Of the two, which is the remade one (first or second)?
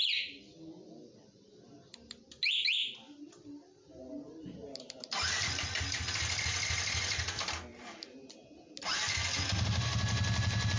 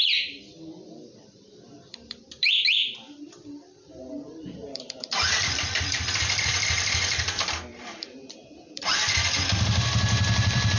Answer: second